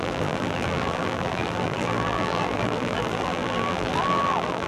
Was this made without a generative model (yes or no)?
no